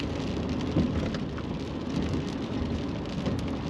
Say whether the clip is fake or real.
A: real